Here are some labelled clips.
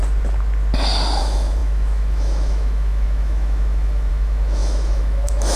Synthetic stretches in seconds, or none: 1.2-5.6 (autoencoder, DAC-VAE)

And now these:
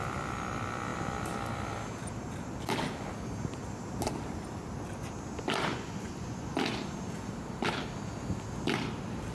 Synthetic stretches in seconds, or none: 5.7-6.5 (vocoder, Vocos)

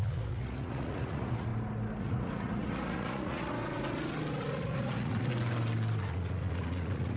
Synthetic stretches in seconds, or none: 0.0-1.5 (vocoder, Vocos); 2.0-3.5; 4.5-5.3; 6.0-7.2

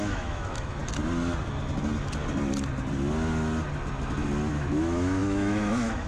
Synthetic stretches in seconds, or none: 0.0-0.8 (autoencoder, DAC-VAE); 4.5-6.1